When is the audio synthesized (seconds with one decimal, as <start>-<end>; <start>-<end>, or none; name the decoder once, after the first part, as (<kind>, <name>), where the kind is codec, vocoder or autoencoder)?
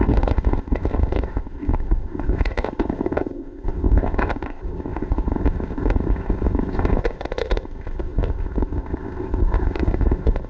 0.0-10.5 (codec, ZipCodec)